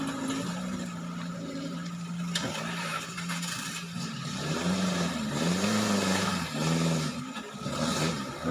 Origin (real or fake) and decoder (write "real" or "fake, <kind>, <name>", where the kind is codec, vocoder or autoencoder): fake, vocoder, BigVGAN v2